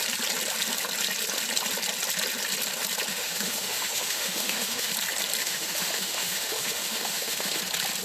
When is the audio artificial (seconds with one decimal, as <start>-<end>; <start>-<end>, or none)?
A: 3.1-4.9; 5.4-7.6